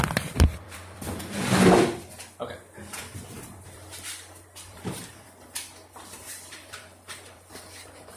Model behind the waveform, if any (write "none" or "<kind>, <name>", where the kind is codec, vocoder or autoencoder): vocoder, BigVGAN v2